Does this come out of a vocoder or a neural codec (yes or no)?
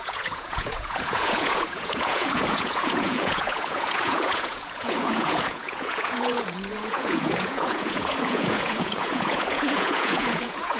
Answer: yes